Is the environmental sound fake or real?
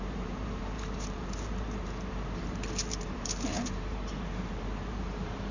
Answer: fake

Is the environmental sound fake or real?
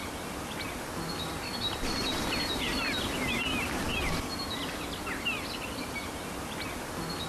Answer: real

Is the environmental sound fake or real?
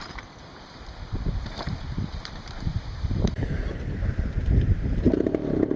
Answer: fake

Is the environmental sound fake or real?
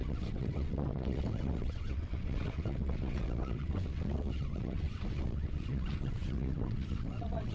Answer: fake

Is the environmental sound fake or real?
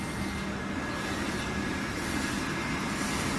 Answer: real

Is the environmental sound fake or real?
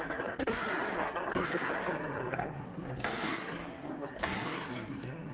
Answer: fake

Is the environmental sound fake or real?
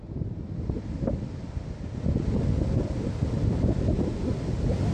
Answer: real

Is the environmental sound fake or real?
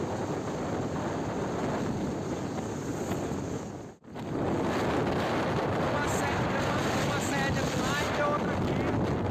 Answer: real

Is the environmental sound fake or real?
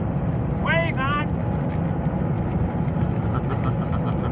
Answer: real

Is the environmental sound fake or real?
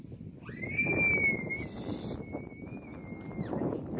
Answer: real